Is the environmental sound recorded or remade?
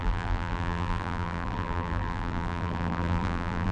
remade